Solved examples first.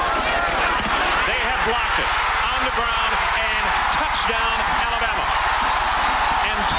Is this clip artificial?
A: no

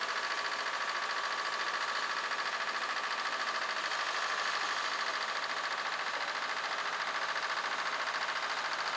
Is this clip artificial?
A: no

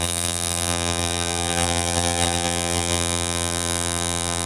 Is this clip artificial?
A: yes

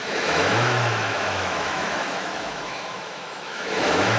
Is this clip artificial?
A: yes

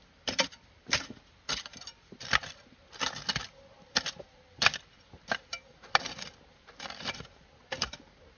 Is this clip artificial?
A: no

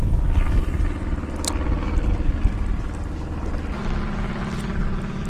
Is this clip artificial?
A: no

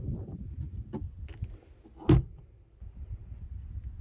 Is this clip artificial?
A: no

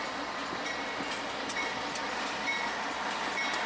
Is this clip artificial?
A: no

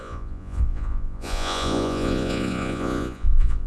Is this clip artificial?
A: yes